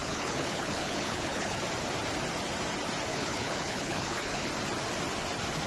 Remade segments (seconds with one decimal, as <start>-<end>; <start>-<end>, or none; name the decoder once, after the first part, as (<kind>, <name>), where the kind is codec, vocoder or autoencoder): 0.0-1.6 (codec, HILCodec); 3.1-4.5